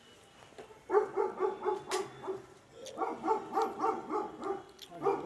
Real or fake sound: real